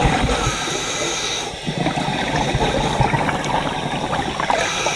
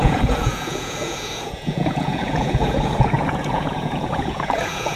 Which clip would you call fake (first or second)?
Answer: second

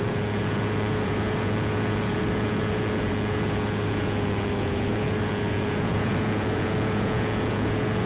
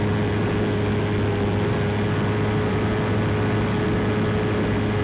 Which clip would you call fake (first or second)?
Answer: first